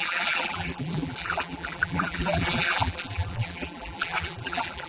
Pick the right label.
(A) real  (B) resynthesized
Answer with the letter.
B